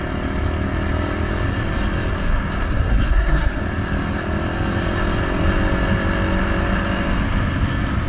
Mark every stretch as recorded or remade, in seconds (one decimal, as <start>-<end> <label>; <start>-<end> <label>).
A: 0.0-2.7 recorded; 2.7-3.6 remade; 3.6-8.1 recorded